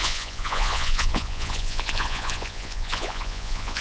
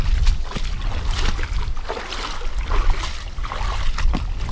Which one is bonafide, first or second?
second